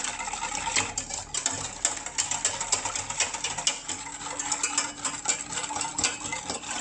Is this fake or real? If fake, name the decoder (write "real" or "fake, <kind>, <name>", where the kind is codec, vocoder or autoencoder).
real